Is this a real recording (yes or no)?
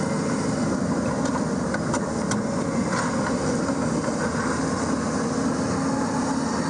yes